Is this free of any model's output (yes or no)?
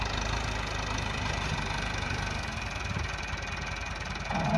yes